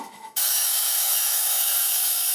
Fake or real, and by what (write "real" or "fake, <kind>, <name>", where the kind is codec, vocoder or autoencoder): fake, autoencoder, DAC-VAE